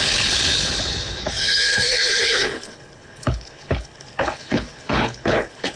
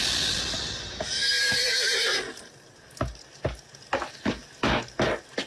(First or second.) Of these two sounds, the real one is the second